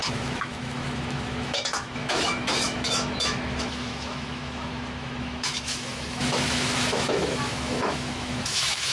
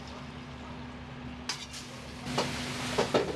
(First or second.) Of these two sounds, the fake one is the first